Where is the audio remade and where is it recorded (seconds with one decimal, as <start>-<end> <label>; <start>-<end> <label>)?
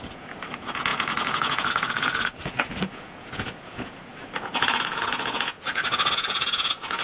0.0-7.0 remade